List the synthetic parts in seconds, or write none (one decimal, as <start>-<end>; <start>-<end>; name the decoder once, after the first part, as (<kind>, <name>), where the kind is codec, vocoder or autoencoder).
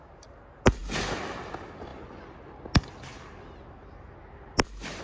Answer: none